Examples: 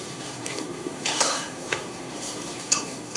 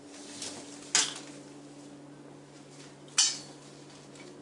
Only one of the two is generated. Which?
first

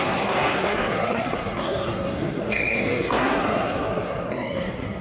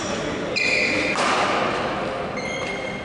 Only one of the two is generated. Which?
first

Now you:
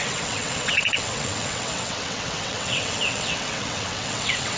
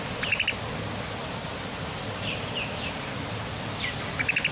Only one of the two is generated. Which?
first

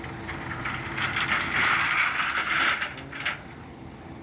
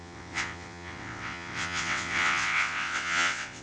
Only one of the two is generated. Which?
second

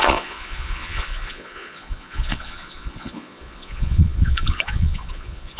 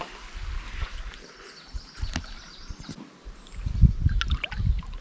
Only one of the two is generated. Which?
first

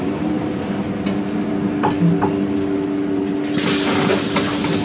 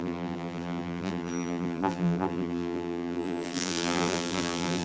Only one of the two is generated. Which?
second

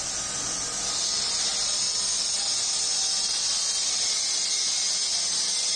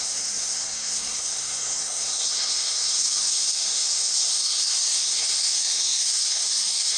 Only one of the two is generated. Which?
second